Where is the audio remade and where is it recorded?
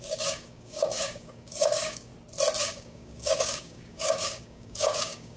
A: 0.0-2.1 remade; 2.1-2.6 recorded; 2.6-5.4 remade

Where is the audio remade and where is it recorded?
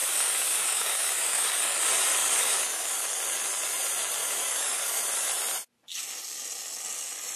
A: 0.0-1.8 remade; 1.8-2.2 recorded; 2.2-3.2 remade; 3.2-4.2 recorded; 4.2-5.0 remade; 5.0-7.4 recorded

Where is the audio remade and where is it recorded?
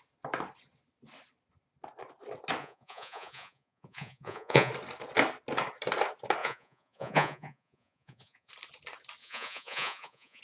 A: 0.0-2.6 recorded; 2.6-4.7 remade; 4.7-6.4 recorded; 6.4-8.5 remade; 8.5-9.2 recorded; 9.2-10.4 remade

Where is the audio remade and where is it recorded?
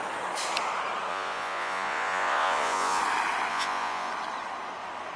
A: 0.0-1.1 recorded; 1.1-3.0 remade; 3.0-3.5 recorded; 3.5-4.1 remade; 4.1-5.2 recorded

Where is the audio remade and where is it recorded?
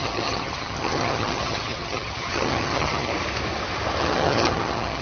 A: 0.0-3.1 remade; 3.1-4.0 recorded; 4.0-5.0 remade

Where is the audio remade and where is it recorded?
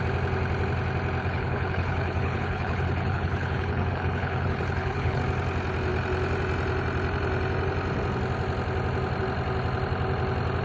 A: 0.0-1.2 recorded; 1.2-5.2 remade; 5.2-10.6 recorded